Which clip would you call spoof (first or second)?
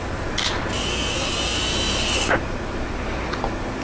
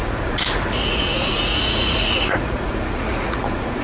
second